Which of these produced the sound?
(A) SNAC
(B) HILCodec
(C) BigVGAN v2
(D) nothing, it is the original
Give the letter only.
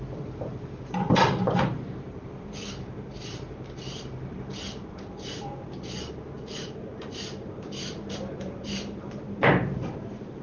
C